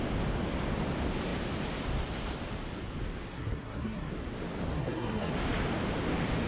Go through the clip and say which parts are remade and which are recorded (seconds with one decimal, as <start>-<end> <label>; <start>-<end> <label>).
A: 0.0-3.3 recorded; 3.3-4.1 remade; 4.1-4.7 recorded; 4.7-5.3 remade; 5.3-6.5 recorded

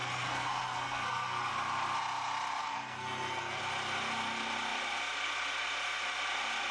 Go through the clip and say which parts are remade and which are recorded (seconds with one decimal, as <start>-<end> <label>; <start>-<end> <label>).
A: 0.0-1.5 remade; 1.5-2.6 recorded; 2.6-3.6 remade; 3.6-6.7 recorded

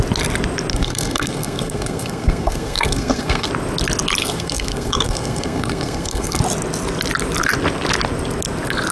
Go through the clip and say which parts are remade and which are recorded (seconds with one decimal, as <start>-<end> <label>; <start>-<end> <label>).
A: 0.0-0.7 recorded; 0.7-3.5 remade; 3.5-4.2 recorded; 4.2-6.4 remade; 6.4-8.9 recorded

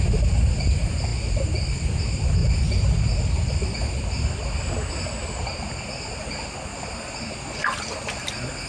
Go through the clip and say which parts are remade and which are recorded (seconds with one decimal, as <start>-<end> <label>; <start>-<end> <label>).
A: 0.0-8.7 recorded

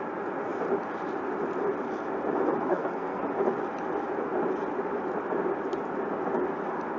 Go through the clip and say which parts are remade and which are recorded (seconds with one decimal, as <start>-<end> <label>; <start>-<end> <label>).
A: 0.0-2.7 recorded; 2.7-3.2 remade; 3.2-7.0 recorded

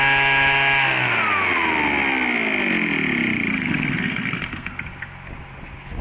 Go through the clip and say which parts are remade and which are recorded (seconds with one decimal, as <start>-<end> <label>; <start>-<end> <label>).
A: 0.0-3.5 recorded; 3.5-4.7 remade; 4.7-6.0 recorded

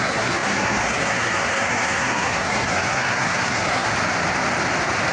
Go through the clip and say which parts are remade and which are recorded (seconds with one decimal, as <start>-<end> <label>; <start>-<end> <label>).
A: 0.0-3.9 remade; 3.9-5.1 recorded